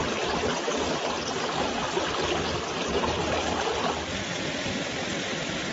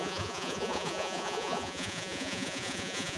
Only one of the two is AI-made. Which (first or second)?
second